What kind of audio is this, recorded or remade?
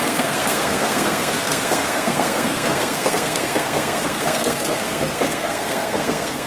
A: remade